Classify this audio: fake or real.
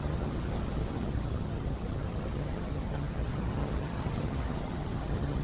fake